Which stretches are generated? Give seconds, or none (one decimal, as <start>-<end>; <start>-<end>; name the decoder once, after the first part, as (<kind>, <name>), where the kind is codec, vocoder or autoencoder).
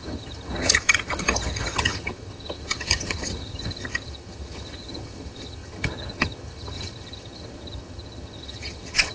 0.0-9.1 (vocoder, HiFi-GAN)